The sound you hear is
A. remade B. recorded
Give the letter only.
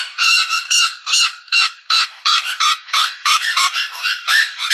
A